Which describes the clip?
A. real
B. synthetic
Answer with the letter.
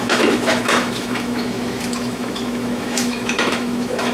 B